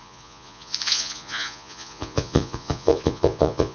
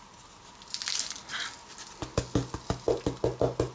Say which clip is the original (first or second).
second